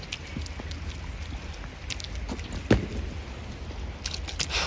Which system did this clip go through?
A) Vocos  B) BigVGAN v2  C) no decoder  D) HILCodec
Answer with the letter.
C